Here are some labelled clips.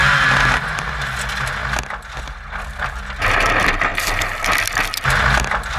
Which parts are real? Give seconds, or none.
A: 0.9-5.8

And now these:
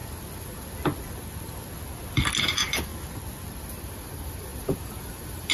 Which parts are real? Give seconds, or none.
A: 0.0-2.4; 2.9-3.6

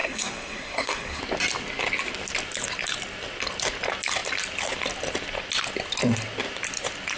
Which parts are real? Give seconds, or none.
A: 1.2-7.2

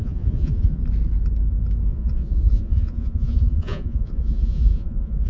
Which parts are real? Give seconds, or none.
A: 0.8-1.9